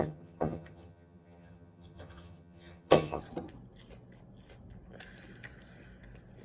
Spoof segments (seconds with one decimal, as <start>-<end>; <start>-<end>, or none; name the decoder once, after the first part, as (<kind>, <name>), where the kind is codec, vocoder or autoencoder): 0.0-3.2 (vocoder, HiFi-GAN)